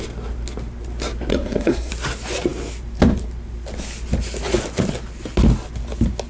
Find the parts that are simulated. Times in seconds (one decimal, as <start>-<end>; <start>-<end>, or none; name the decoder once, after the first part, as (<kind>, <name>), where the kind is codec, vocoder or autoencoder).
1.3-1.9 (codec, SNAC)